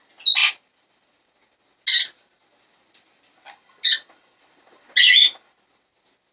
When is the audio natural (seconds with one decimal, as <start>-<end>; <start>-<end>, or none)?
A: 0.0-6.3